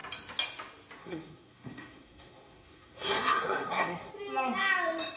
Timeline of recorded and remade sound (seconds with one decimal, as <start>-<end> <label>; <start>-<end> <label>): 0.0-1.0 recorded; 1.0-4.1 remade; 4.1-5.2 recorded